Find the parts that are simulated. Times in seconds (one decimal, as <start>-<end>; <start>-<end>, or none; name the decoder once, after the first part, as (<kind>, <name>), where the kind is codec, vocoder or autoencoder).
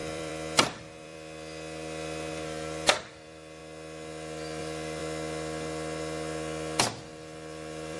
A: 0.0-3.6 (vocoder, BigVGAN v2); 4.6-5.0; 6.8-8.0